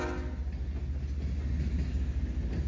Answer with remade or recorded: recorded